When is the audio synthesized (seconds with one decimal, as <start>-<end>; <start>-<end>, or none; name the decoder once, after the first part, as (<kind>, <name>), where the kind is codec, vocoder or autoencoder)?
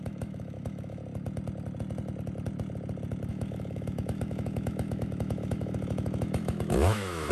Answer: 0.0-1.0 (autoencoder, DAC-VAE); 3.3-7.3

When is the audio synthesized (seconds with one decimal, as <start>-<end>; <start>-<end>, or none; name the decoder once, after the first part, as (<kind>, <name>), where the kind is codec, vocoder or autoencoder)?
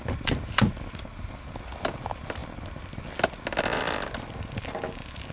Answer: none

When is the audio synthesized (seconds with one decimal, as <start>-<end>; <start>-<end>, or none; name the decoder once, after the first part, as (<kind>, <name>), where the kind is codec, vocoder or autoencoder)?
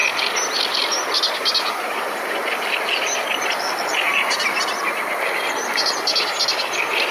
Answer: none